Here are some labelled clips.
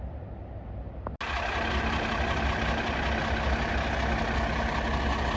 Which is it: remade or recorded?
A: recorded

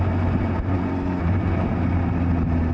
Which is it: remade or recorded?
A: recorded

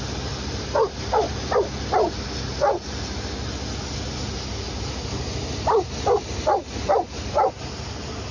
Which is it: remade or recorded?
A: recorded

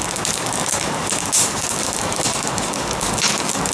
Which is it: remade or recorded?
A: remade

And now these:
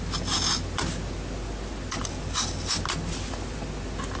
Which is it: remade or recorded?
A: recorded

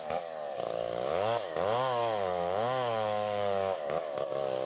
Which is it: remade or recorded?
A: remade